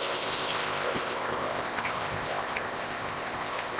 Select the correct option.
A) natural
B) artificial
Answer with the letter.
B